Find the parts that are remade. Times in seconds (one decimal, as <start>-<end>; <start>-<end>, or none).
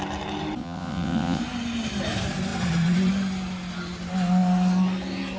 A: 0.6-1.4